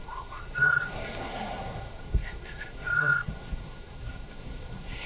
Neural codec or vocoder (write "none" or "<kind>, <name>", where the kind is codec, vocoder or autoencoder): codec, SNAC